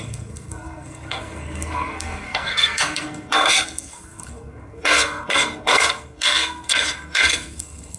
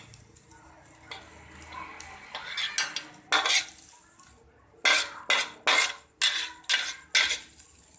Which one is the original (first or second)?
second